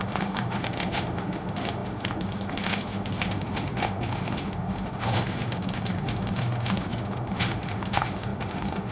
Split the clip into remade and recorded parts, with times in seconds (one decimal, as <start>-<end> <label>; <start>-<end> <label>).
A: 0.0-8.9 remade